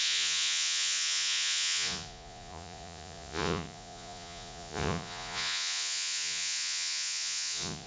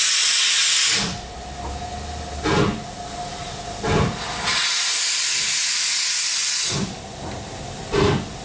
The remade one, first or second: first